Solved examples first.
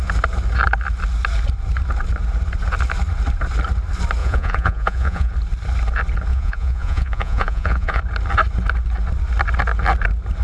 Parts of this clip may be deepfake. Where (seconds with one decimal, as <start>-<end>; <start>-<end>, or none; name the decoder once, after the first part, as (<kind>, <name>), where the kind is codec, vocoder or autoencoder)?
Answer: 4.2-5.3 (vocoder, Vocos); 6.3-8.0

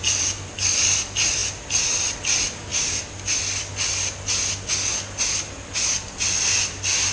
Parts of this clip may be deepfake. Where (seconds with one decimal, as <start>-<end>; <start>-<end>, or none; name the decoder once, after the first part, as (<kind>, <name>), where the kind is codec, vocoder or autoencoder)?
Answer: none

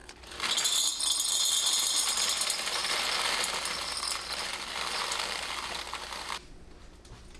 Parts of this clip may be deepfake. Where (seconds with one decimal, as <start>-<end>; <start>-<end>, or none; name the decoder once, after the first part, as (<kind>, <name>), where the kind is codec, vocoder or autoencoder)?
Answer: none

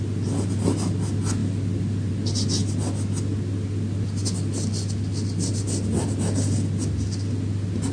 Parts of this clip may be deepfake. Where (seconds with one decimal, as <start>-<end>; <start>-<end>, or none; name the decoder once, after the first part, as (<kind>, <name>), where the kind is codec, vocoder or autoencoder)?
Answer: none

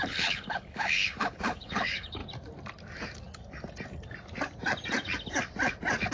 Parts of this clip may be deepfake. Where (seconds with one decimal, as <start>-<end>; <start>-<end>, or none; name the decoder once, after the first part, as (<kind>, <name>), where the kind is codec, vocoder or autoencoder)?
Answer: 0.0-2.2 (codec, HILCodec)

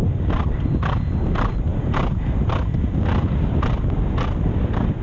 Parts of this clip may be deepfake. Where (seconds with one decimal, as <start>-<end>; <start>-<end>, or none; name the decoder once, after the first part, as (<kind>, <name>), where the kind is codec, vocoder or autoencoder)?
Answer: none